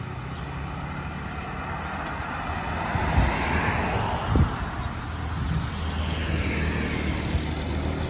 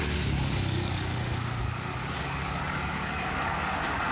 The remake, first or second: second